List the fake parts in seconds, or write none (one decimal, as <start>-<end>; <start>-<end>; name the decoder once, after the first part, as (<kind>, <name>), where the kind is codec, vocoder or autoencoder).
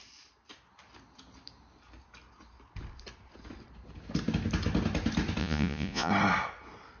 5.4-6.1 (vocoder, Vocos)